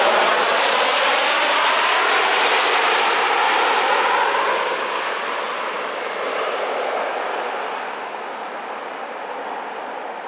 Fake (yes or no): no